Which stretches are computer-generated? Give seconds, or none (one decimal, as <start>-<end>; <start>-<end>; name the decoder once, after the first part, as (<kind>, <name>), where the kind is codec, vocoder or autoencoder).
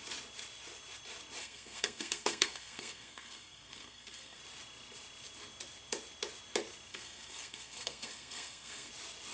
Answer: 1.4-4.4 (codec, SNAC); 6.9-8.9